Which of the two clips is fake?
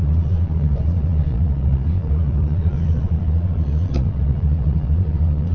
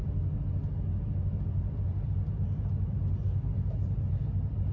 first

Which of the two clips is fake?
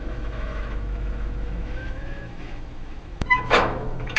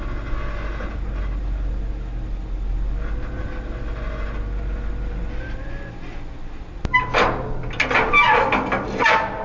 first